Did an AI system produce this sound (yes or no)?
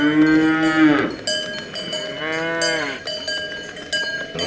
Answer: no